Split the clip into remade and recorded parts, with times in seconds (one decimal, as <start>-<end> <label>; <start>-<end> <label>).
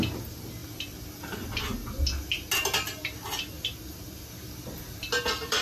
0.0-5.6 recorded